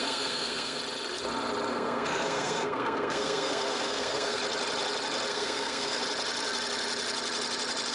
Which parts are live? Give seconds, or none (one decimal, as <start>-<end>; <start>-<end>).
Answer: 0.8-1.7; 4.4-5.3; 6.0-7.9